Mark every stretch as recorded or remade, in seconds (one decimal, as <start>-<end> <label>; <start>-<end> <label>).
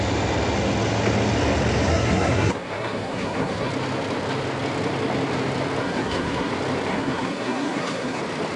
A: 0.0-1.9 recorded; 1.9-3.7 remade; 3.7-5.8 recorded; 5.8-6.5 remade; 6.5-6.9 recorded; 6.9-8.2 remade; 8.2-8.6 recorded